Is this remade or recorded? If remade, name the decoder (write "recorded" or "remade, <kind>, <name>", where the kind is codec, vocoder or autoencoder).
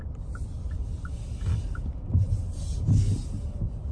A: recorded